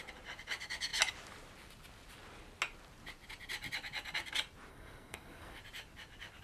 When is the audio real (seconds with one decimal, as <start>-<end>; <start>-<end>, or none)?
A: 0.0-4.7; 5.6-6.4

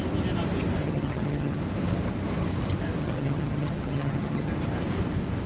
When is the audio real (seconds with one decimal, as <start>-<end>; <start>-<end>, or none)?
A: 0.0-0.8; 1.6-3.0; 4.5-5.5

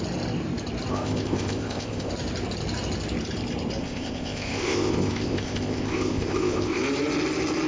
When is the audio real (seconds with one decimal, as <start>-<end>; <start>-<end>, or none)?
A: 0.0-0.9; 2.1-3.8; 6.8-7.7

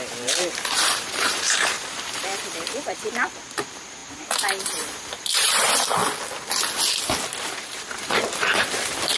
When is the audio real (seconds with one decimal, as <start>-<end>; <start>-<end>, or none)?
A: 6.0-7.4

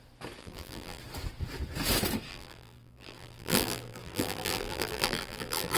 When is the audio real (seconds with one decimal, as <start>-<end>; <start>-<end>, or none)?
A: 0.0-0.4; 1.0-2.3

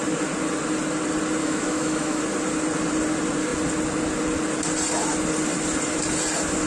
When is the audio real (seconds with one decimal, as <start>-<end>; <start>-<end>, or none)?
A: 0.0-1.4; 2.2-6.7

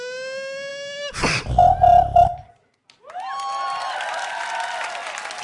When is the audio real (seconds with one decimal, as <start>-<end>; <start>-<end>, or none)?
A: 0.0-5.4